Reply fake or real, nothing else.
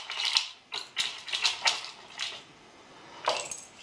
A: real